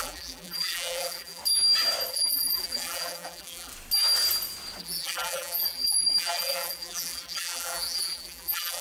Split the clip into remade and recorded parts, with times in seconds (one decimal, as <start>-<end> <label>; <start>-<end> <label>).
0.0-1.4 remade; 1.4-2.1 recorded; 2.1-3.7 remade; 3.7-4.8 recorded; 4.8-8.8 remade